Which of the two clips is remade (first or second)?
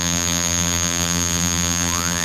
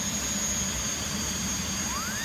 first